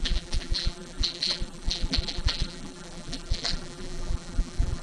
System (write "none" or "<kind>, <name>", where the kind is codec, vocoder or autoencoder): vocoder, BigVGAN v2